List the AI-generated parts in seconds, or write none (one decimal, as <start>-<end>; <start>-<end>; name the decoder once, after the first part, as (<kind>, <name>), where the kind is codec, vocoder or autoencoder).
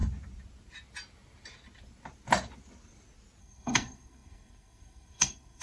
3.4-5.6 (codec, SNAC)